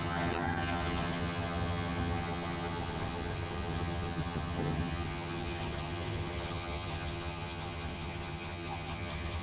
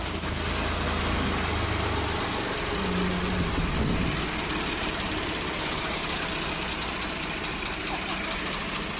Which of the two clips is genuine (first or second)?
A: second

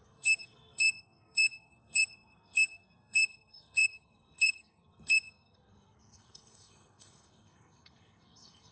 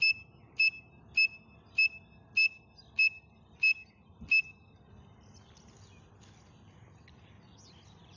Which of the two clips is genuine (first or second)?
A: second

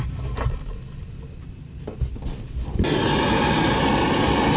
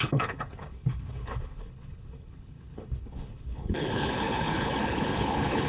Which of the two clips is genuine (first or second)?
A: first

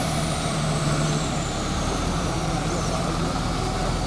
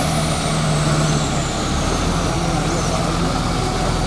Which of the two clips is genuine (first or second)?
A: second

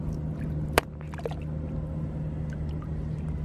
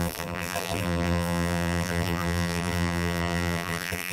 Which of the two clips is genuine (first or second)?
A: first